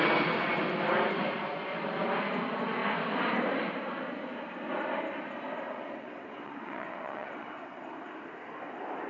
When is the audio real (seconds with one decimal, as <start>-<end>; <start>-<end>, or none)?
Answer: 0.0-5.7; 7.8-9.1